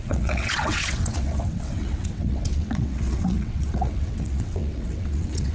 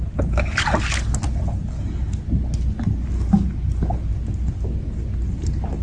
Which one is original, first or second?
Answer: second